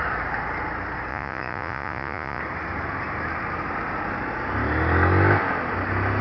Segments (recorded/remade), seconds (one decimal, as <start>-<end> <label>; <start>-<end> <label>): 0.0-1.1 recorded; 1.1-2.4 remade; 2.4-6.2 recorded